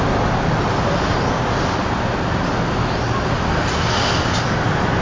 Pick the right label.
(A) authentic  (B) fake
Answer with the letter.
A